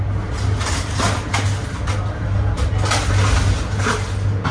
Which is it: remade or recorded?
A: recorded